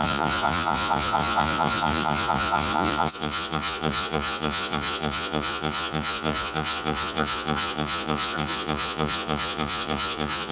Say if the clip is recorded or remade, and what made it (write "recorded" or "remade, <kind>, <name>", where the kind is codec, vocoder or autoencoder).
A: remade, vocoder, Vocos